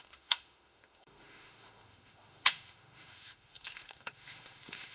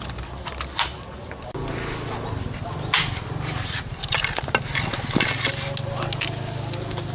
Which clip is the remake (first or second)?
first